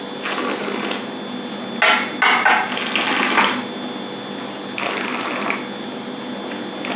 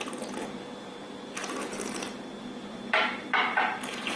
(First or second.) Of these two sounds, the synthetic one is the second